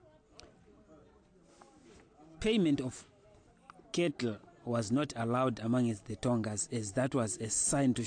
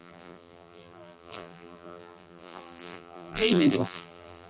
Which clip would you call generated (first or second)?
second